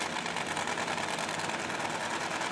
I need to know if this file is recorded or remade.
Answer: recorded